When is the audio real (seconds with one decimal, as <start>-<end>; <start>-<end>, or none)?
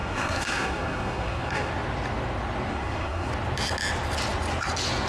1.7-2.7; 3.3-5.1